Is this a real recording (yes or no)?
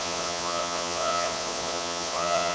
no